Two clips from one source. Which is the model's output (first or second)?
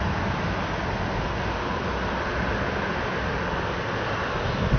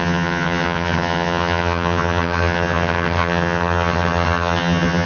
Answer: second